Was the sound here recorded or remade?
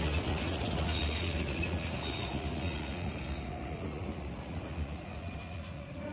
remade